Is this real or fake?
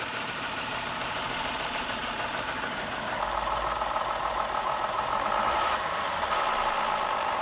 fake